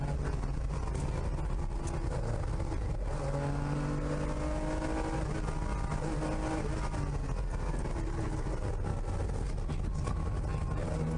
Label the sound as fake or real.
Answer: real